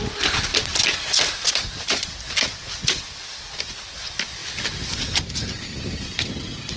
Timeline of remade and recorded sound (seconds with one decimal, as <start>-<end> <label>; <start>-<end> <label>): 0.0-6.8 recorded